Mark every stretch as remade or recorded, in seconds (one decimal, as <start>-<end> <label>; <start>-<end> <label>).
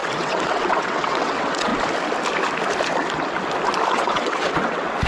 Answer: 0.0-1.7 remade; 1.7-3.9 recorded; 3.9-5.1 remade